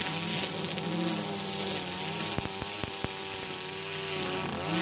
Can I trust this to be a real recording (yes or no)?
yes